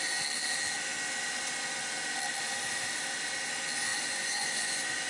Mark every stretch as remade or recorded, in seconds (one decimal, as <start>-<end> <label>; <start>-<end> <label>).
0.0-3.9 recorded; 3.9-5.1 remade